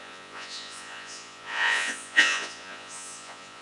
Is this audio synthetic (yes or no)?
yes